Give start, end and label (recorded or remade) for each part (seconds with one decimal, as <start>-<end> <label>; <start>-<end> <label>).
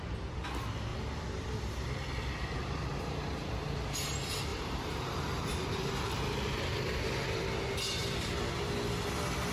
0.0-0.9 recorded; 0.9-1.9 remade; 1.9-4.5 recorded; 4.5-6.2 remade; 6.2-9.5 recorded